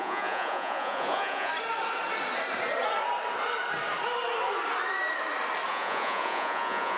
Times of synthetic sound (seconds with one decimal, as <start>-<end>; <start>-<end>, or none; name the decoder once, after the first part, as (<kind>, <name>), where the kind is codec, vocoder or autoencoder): 0.0-1.5 (vocoder, Vocos); 5.7-7.0